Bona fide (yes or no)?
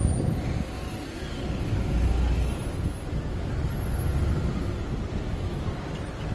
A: yes